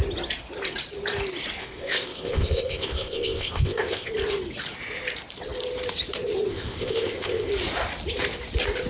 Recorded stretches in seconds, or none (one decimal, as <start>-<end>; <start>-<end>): 0.0-1.6; 4.1-6.5; 7.5-8.9